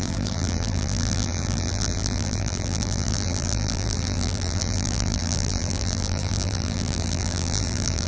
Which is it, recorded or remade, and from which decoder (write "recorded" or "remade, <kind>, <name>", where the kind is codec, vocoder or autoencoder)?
remade, vocoder, BigVGAN v2